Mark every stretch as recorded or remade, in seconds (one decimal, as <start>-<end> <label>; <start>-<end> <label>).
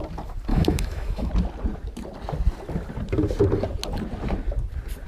0.0-0.5 recorded; 0.5-1.3 remade; 1.3-5.1 recorded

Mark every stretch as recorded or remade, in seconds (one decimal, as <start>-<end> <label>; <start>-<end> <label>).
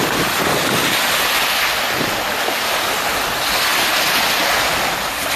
0.0-5.4 recorded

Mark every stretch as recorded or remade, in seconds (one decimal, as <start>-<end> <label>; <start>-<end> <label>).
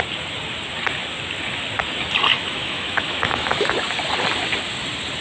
0.0-2.3 recorded; 2.3-3.7 remade; 3.7-5.2 recorded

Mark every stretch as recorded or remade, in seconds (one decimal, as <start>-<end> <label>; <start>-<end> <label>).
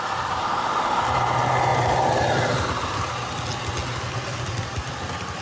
0.0-0.4 recorded; 0.4-1.0 remade; 1.0-5.4 recorded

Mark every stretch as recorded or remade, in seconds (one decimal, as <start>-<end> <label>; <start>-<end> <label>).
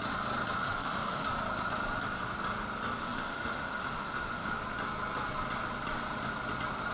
0.0-0.6 recorded; 0.6-1.3 remade; 1.3-3.0 recorded; 3.0-4.5 remade; 4.5-6.9 recorded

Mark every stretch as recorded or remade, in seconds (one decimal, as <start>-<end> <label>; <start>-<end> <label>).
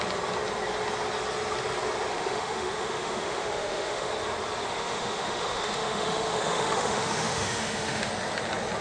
0.0-2.1 recorded; 2.1-4.1 remade; 4.1-4.7 recorded; 4.7-8.1 remade; 8.1-8.8 recorded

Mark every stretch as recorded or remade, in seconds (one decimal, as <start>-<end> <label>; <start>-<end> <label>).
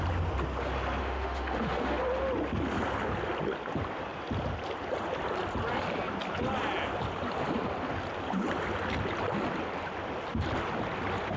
0.0-1.0 recorded; 1.0-2.0 remade; 2.0-11.4 recorded